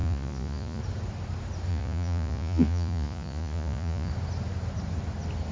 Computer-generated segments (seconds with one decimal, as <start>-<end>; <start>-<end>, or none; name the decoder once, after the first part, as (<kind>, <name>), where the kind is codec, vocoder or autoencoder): 0.0-0.8 (vocoder, Vocos); 1.7-4.1